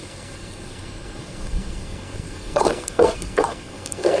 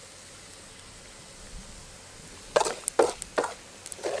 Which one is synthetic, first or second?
first